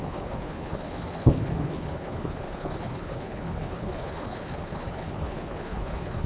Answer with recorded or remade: remade